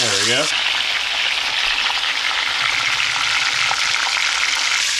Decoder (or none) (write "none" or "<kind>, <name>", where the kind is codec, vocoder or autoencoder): none